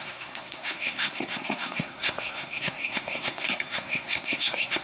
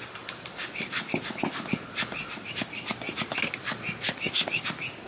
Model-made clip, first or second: first